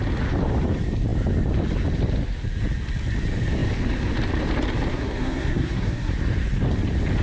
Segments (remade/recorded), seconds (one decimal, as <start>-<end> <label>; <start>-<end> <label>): 0.0-4.9 recorded; 4.9-6.1 remade; 6.1-7.2 recorded